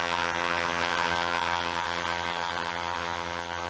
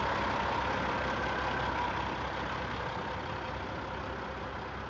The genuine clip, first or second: second